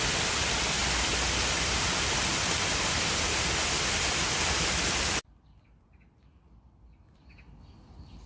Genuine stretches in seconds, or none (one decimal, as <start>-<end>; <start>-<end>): 0.0-8.3